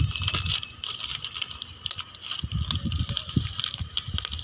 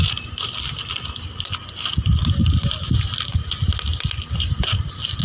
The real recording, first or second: second